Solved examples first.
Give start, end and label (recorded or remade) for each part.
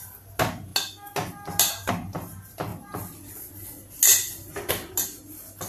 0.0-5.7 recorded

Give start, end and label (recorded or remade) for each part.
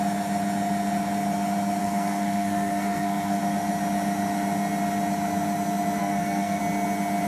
0.0-1.8 recorded; 1.8-3.4 remade; 3.4-6.0 recorded; 6.0-6.6 remade; 6.6-7.3 recorded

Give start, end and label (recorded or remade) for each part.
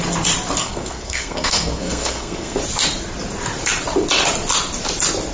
0.0-0.6 recorded; 0.6-2.6 remade; 2.6-5.3 recorded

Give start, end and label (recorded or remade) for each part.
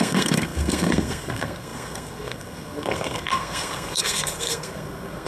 0.0-5.3 remade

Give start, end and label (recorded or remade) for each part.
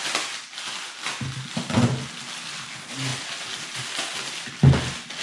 0.0-5.2 recorded